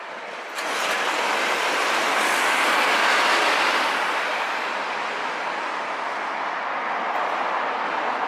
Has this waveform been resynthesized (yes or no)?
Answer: no